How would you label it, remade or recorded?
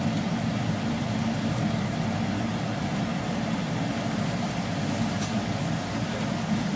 recorded